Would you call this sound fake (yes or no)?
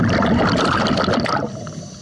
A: no